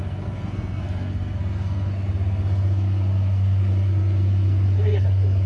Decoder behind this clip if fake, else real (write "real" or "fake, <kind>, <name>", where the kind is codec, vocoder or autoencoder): fake, codec, SNAC